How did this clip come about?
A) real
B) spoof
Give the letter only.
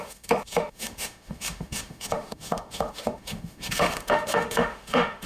B